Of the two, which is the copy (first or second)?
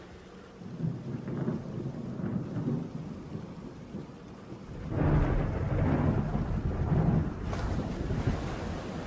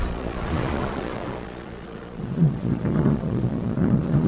second